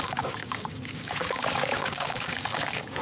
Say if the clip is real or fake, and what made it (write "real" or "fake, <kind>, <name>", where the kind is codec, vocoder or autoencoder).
fake, codec, DAC